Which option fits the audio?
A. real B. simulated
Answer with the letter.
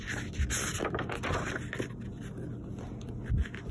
A